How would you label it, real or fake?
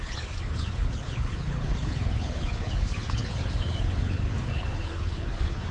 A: fake